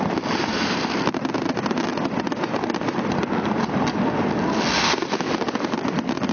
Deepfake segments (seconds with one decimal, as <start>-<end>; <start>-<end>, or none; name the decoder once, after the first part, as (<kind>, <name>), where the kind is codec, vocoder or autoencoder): 0.5-1.0 (vocoder, BigVGAN v2)